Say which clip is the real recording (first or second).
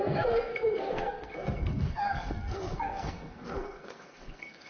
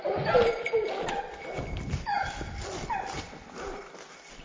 second